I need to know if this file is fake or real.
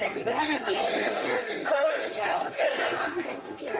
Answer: fake